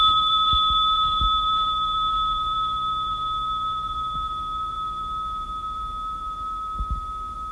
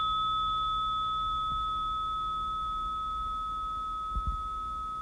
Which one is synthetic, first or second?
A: first